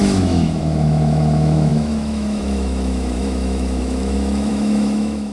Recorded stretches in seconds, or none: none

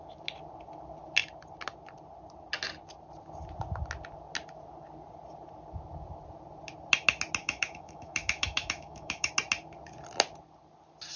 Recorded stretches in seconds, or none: 0.0-7.4; 9.3-11.2

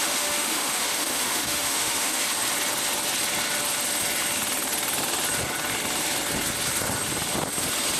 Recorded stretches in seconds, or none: 2.2-8.0

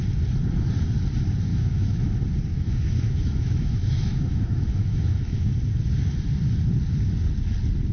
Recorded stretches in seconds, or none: 0.0-1.5; 2.1-2.5; 5.5-7.9

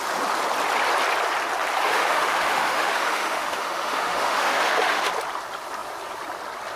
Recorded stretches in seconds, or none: 0.0-1.9; 5.1-6.8